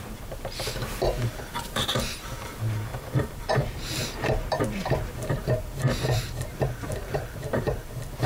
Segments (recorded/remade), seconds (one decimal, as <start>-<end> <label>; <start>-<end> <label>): 0.0-0.8 remade; 0.8-1.5 recorded; 1.5-8.3 remade